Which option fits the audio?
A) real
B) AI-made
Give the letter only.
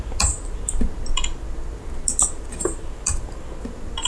A